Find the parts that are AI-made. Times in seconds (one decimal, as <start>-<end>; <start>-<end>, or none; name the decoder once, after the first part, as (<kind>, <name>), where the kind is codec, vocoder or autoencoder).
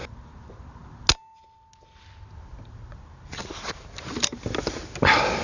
none